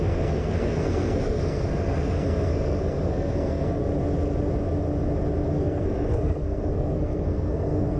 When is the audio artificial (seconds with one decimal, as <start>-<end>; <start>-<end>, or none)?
0.0-3.8; 5.5-8.0